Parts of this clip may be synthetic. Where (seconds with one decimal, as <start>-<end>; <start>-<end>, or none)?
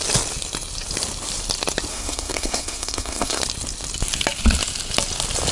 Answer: 1.9-3.4